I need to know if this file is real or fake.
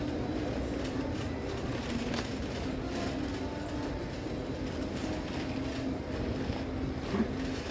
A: real